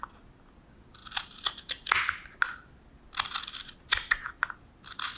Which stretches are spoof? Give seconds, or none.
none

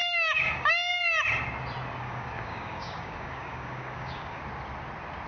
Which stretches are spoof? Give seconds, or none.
0.0-0.7 (codec, DAC); 2.0-4.4

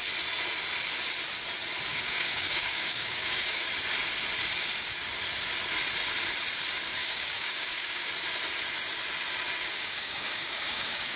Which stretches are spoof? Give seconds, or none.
1.9-3.7 (codec, DAC); 7.0-8.1; 9.6-11.2

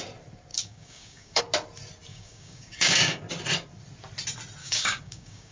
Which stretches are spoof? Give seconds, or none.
0.5-1.4 (codec, DAC); 2.1-3.2; 4.6-5.5

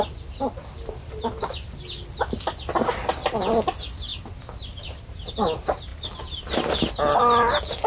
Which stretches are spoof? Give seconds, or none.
none

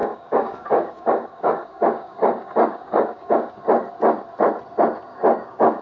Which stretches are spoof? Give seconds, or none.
0.0-3.5 (codec, DAC); 5.1-5.8

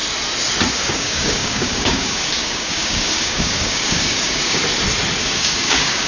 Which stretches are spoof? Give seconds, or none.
0.7-4.6 (codec, DAC); 5.2-6.1